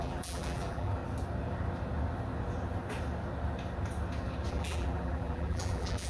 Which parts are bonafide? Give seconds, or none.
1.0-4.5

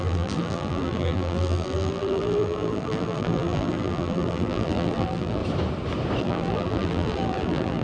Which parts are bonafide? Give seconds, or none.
5.4-6.2

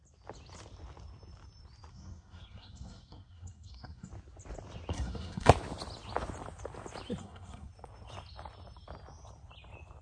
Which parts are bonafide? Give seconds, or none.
0.0-1.9; 4.1-4.9; 5.5-7.2; 7.7-10.0

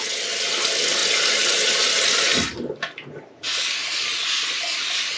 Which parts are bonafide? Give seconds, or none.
0.0-5.2

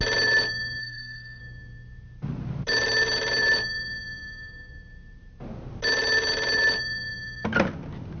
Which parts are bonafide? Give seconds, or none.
0.0-0.8; 1.4-8.2

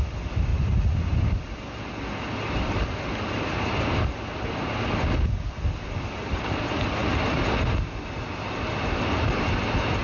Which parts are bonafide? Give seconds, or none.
0.0-10.0